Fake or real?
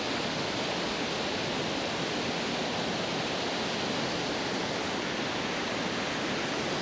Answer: real